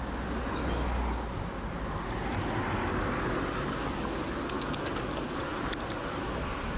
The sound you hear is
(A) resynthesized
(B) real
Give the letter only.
B